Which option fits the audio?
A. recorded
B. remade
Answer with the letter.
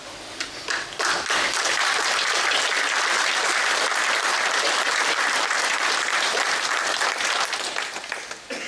A